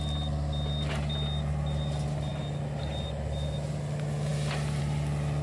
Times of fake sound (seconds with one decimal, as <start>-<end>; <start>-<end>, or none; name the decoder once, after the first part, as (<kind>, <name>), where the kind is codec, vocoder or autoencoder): none